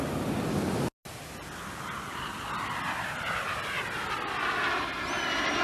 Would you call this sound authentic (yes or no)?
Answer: yes